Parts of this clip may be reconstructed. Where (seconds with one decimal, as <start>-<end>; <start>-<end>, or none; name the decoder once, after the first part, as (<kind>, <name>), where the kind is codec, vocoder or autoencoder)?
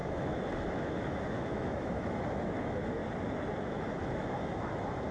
0.0-3.0 (autoencoder, DAC-VAE); 3.6-5.1